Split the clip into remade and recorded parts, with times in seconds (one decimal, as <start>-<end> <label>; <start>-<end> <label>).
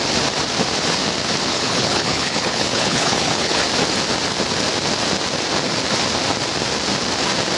0.0-1.5 recorded; 1.5-3.6 remade; 3.6-7.6 recorded